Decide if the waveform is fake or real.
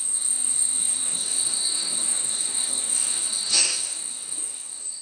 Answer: fake